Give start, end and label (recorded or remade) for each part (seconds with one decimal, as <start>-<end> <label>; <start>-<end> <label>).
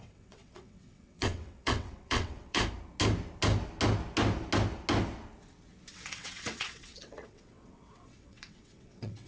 0.0-2.6 remade; 2.6-5.9 recorded; 5.9-9.3 remade